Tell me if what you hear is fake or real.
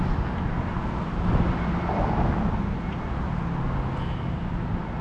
real